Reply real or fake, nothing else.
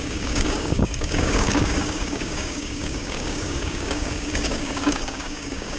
fake